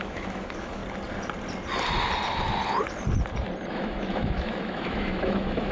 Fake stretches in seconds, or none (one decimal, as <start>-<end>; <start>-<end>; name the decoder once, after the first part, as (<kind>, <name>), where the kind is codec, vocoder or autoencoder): 0.0-0.8 (autoencoder, DAC-VAE); 3.7-5.7

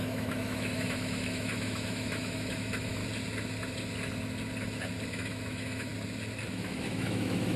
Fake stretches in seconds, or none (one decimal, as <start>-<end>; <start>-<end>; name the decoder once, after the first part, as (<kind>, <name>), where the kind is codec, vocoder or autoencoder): 0.0-3.0 (autoencoder, DAC-VAE); 5.1-5.9; 6.5-7.6

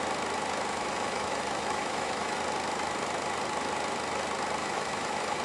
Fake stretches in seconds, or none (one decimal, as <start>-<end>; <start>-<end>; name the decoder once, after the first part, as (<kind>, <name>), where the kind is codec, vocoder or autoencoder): 0.7-2.4 (autoencoder, DAC-VAE); 4.6-5.4

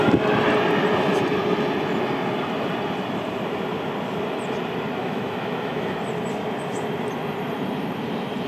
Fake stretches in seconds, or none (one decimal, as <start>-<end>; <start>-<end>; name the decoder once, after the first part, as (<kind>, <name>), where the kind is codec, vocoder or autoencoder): 5.0-6.0 (autoencoder, DAC-VAE)